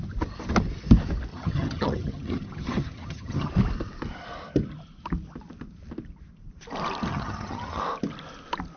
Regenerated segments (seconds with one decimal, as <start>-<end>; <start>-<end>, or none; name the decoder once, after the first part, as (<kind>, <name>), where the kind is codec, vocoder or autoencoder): 1.3-3.5 (vocoder, HiFi-GAN); 7.1-7.8